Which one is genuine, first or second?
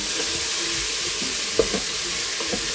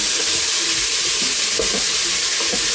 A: first